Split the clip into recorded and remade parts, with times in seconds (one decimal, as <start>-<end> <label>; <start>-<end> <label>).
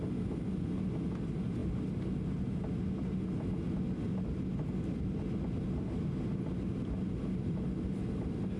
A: 0.0-8.6 recorded